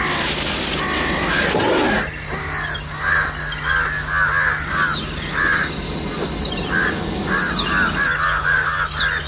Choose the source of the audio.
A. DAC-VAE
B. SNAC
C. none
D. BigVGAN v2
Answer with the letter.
C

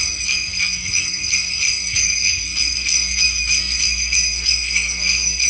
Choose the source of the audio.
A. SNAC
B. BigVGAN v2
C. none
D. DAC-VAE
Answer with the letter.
A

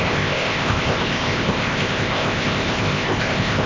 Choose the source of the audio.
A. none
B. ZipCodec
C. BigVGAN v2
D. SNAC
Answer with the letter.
B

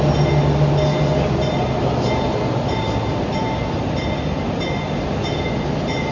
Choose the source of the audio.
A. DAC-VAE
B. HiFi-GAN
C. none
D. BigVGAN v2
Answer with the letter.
C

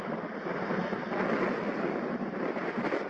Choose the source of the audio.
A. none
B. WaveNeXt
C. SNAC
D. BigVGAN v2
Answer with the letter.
A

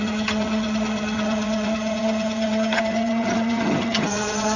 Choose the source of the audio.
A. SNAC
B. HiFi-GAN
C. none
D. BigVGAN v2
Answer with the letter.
B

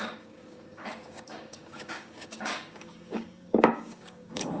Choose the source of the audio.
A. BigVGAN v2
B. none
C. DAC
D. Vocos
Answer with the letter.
C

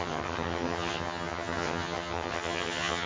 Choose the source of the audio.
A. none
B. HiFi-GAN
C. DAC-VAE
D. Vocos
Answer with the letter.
B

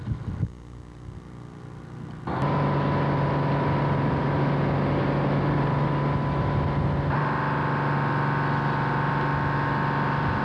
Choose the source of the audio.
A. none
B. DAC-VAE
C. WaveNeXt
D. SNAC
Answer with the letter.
A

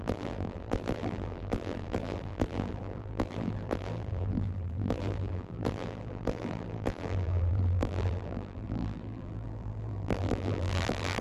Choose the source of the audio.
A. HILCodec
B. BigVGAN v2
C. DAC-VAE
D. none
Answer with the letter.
B